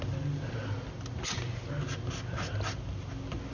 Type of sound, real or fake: real